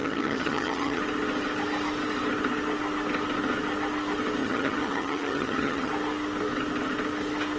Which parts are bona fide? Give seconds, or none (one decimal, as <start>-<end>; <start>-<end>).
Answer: 1.0-4.4; 5.9-7.6